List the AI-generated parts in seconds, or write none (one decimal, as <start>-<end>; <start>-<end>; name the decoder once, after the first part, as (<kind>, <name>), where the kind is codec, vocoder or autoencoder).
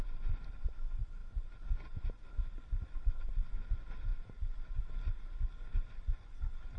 none